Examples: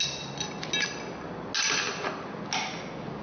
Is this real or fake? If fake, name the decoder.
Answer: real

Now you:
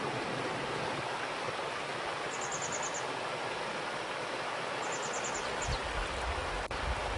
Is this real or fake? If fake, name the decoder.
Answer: real